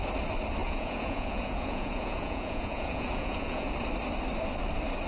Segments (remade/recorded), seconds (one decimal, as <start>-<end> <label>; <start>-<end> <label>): 0.0-0.6 recorded; 0.6-3.7 remade; 3.7-5.1 recorded